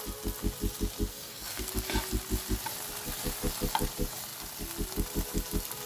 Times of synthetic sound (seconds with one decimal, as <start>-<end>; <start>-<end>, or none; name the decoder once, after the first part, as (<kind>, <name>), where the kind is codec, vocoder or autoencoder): 1.1-1.7 (codec, SNAC)